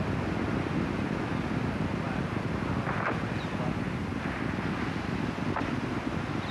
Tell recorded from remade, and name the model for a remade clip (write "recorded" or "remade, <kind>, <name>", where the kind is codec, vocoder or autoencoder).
recorded